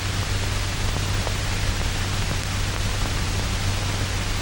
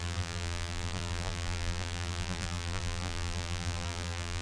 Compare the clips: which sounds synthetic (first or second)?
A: second